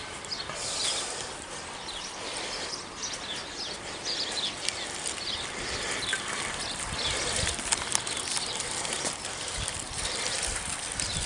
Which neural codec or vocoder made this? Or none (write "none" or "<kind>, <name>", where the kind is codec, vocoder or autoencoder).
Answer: vocoder, BigVGAN v2